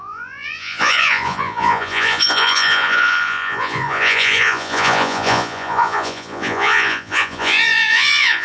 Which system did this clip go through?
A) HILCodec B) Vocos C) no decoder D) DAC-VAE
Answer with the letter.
B